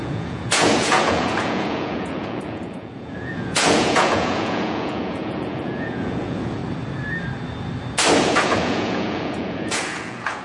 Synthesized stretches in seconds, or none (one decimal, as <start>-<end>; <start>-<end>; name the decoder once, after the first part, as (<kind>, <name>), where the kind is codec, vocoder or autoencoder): 0.0-6.6 (vocoder, Vocos); 8.2-10.4